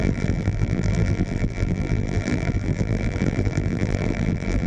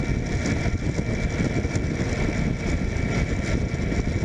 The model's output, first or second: first